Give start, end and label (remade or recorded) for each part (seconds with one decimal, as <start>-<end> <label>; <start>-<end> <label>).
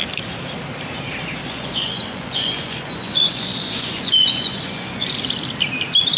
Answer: 0.0-1.4 recorded; 1.4-5.1 remade; 5.1-6.2 recorded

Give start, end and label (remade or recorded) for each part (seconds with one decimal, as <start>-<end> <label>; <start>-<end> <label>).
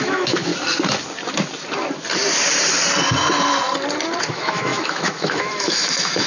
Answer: 0.0-0.5 remade; 0.5-4.2 recorded; 4.2-6.3 remade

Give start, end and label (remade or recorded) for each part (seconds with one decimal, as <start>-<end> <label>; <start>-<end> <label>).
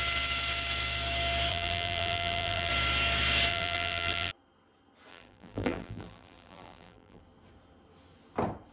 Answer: 0.0-1.5 recorded; 1.5-2.7 remade; 2.7-3.5 recorded; 3.5-4.3 remade; 4.3-5.1 recorded; 5.1-7.2 remade; 7.2-8.7 recorded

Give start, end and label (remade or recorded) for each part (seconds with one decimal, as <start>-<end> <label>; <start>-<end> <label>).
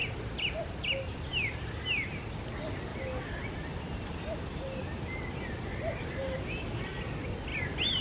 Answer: 0.0-2.9 recorded; 2.9-7.0 remade; 7.0-7.5 recorded; 7.5-8.0 remade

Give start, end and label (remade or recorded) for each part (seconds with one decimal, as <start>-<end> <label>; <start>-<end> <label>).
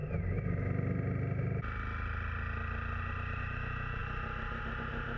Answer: 0.0-5.2 recorded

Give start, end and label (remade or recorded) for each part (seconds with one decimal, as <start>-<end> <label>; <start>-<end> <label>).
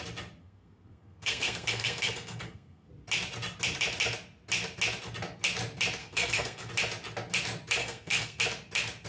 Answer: 0.0-0.4 recorded; 0.4-2.9 remade; 2.9-6.0 recorded; 6.0-6.7 remade; 6.7-7.8 recorded; 7.8-8.4 remade; 8.4-9.1 recorded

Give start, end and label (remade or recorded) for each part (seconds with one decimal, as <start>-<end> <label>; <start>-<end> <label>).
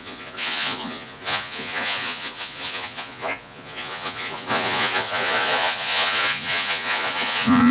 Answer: 0.0-7.7 remade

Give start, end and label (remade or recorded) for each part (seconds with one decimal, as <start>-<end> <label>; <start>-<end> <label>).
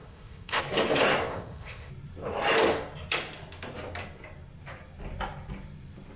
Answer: 0.0-0.6 remade; 0.6-1.3 recorded; 1.3-1.9 remade; 1.9-6.2 recorded